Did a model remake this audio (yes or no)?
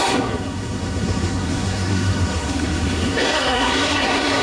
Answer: yes